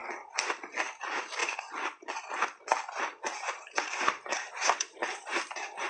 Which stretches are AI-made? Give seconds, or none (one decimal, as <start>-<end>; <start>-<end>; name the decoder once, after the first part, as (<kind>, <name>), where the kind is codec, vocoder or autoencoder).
1.0-1.4 (vocoder, BigVGAN v2); 3.0-5.9